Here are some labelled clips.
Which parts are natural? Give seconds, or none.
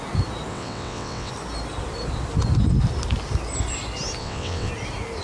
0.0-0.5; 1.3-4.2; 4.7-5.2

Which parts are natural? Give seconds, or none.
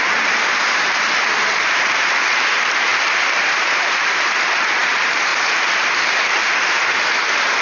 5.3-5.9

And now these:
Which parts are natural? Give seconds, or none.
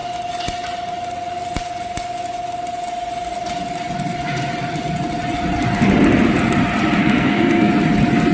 0.0-7.0; 7.7-8.3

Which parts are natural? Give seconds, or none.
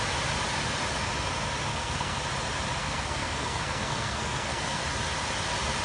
0.0-1.7; 2.2-2.8; 4.8-5.8